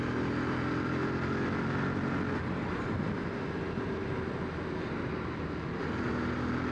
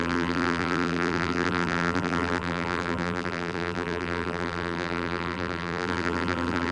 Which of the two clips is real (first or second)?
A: first